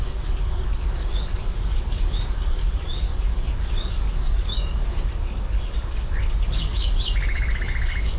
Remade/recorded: remade